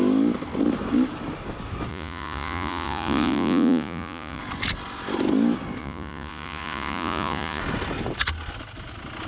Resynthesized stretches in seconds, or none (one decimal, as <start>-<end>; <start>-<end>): 1.9-4.4; 5.8-7.6